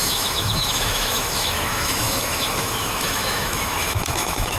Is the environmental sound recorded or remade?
remade